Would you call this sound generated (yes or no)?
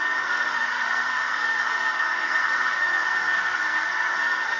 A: yes